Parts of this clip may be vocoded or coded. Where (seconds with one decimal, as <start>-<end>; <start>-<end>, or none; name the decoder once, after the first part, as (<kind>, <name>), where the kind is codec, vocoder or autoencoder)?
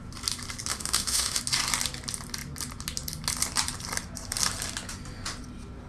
0.7-1.4 (autoencoder, DAC-VAE)